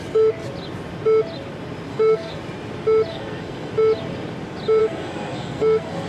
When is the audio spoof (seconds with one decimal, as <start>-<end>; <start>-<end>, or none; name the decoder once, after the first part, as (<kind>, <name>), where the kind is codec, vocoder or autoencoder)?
1.9-2.4 (codec, SNAC); 3.1-3.7; 4.8-6.1